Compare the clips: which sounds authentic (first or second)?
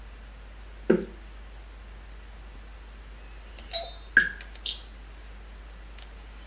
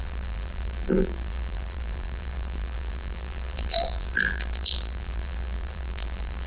first